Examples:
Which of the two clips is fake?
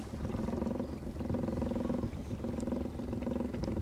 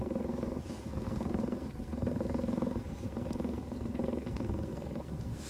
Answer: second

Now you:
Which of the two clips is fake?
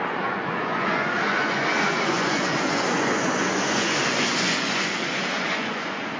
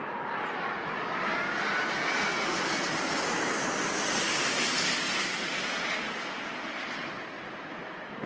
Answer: first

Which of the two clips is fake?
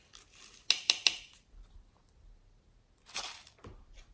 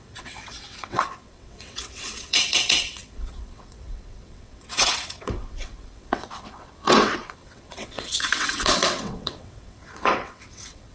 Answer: second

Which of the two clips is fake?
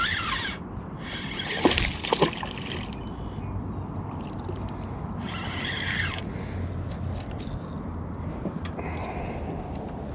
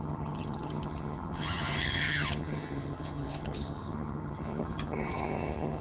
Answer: second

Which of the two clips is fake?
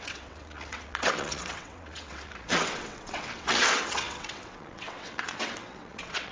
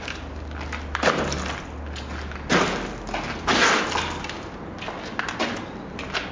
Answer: first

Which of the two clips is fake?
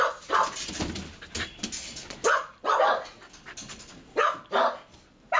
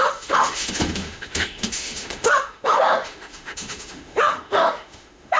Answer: second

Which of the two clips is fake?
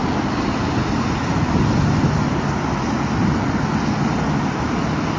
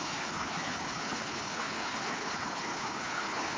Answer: second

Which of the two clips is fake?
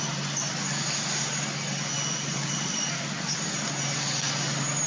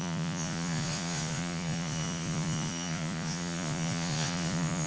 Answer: second